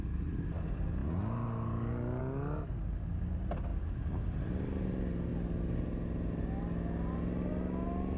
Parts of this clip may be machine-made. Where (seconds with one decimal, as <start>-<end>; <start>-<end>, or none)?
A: none